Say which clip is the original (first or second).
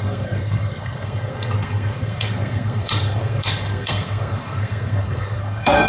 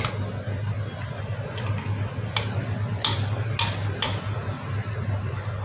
second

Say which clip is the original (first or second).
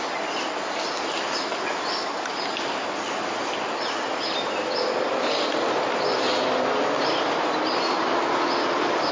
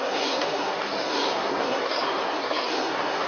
first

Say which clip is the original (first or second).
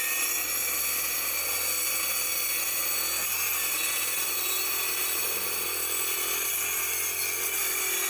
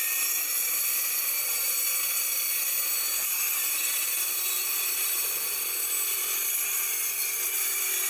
first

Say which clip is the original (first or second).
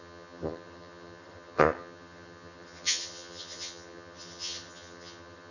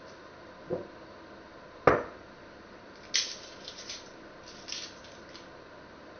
second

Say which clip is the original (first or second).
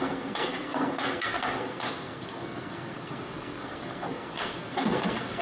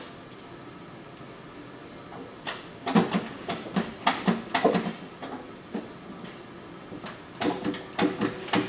second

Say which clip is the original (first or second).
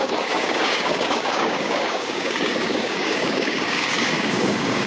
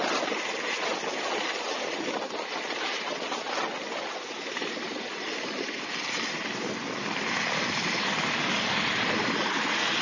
second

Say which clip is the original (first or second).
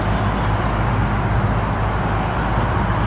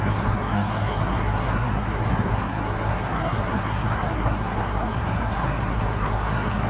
first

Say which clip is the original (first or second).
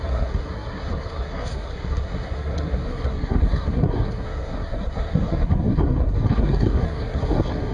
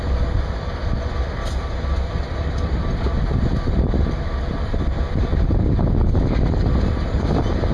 second